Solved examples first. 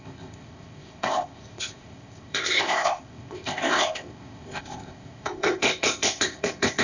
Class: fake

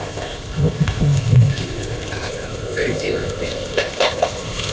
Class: fake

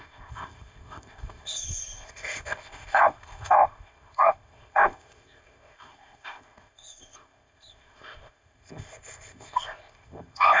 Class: fake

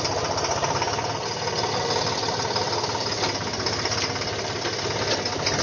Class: real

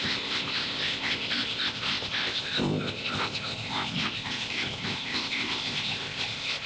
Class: fake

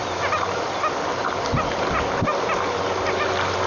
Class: real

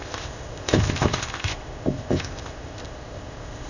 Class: fake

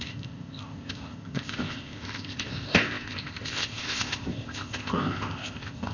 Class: fake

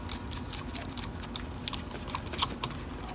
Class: real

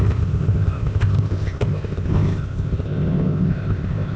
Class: fake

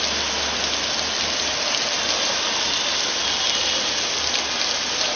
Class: real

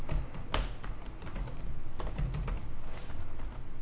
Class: real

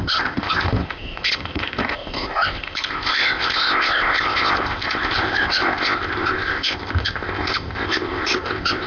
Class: fake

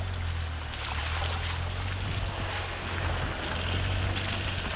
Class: real